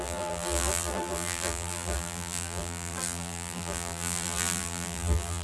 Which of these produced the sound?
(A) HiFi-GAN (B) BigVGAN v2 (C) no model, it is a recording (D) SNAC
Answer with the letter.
B